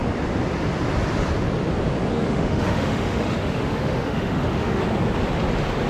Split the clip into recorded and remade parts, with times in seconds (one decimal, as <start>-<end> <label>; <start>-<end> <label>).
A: 0.0-2.1 recorded; 2.1-4.8 remade; 4.8-5.9 recorded